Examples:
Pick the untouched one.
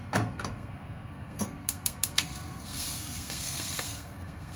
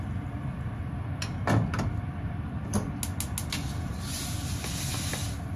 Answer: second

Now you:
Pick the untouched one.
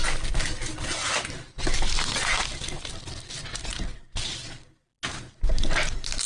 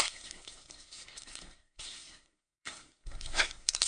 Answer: first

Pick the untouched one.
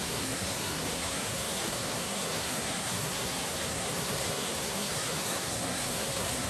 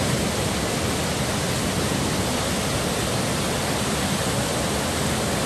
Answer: second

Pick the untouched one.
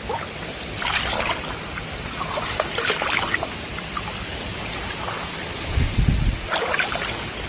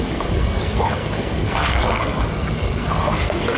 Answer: first